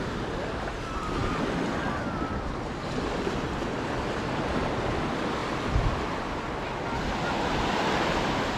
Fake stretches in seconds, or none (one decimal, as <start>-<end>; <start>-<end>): none